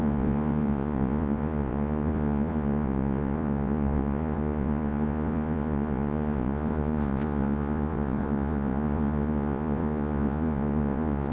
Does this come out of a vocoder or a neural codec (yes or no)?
yes